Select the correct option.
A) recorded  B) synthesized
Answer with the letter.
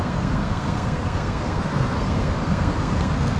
B